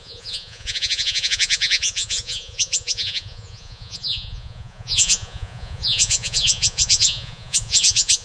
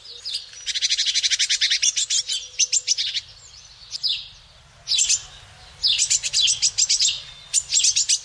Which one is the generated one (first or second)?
first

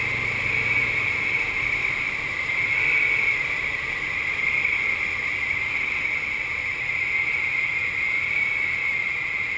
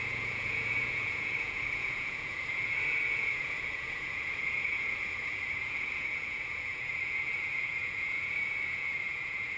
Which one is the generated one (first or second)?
second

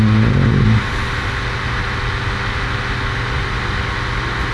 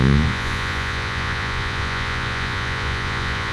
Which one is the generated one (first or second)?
second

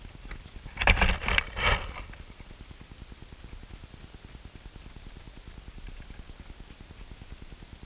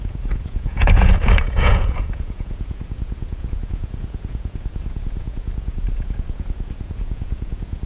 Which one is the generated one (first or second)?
second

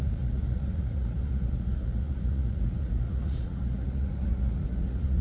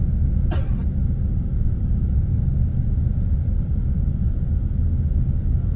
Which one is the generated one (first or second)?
first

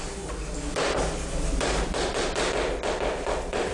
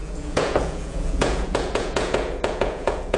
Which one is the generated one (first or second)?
second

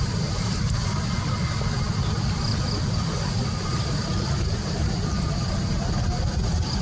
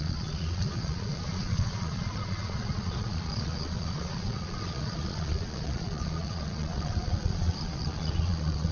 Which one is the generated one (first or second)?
second